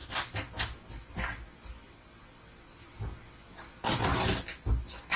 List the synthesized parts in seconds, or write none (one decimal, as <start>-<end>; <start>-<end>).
none